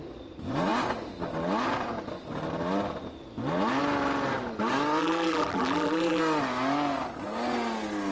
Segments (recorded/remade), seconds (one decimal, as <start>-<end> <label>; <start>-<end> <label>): 0.0-5.0 recorded; 5.0-6.2 remade; 6.2-8.1 recorded